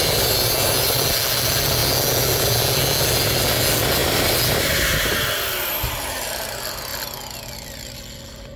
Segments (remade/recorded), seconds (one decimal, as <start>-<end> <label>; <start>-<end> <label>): 0.0-8.6 recorded